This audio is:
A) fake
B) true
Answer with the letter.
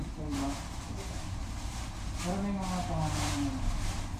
B